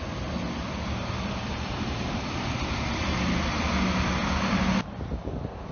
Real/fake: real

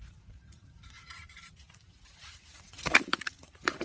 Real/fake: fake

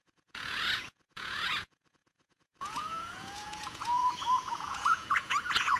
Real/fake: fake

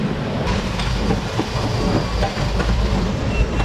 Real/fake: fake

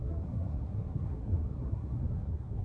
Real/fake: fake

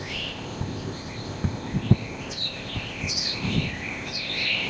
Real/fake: fake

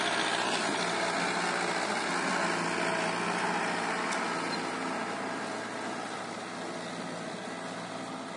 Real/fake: real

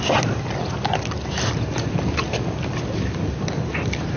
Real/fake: real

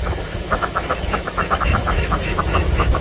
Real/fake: fake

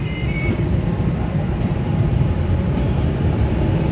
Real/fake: fake